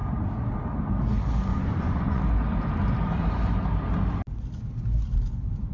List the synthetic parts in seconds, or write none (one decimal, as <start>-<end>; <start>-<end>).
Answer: 1.5-2.2